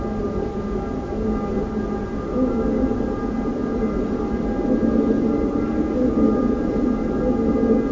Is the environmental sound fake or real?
real